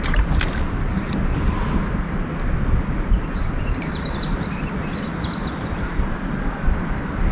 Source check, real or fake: real